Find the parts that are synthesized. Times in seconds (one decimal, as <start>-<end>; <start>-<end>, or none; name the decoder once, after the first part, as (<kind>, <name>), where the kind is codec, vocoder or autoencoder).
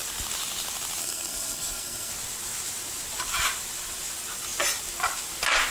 1.0-2.1 (codec, SNAC)